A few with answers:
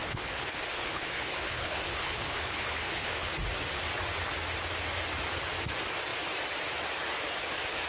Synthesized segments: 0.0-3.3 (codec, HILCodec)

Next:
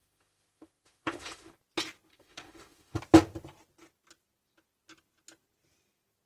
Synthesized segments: 0.0-1.5 (autoencoder, DAC-VAE); 2.1-3.0

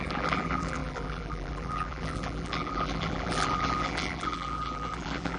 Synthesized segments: 0.0-5.4 (vocoder, BigVGAN v2)

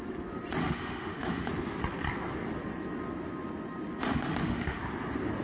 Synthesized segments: 0.6-1.5 (autoencoder, DAC-VAE); 4.0-4.8

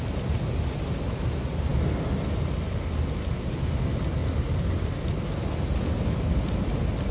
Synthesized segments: none

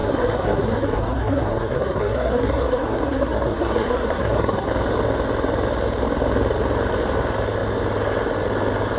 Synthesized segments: 0.0-4.7 (codec, SNAC)

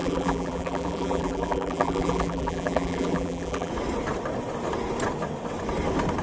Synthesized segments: 0.0-3.7 (vocoder, BigVGAN v2)

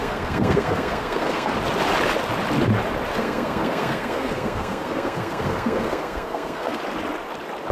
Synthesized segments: 0.0-1.5 (codec, SNAC); 3.2-6.8